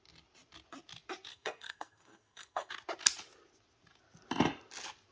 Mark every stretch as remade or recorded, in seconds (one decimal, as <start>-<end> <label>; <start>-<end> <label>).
0.0-1.3 recorded; 1.3-2.7 remade; 2.7-5.1 recorded